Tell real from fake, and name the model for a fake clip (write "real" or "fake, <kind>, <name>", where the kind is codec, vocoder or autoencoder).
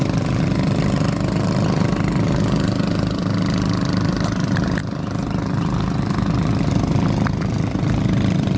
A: real